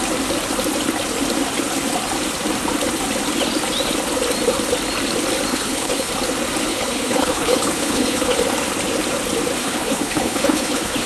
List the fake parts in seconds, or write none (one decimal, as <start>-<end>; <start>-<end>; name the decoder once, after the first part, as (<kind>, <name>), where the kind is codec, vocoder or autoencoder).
5.5-6.1 (codec, HILCodec); 6.7-8.4; 9.6-11.1